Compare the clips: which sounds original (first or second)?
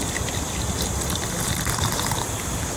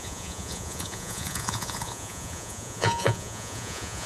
first